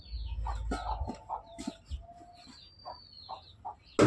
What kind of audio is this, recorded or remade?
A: recorded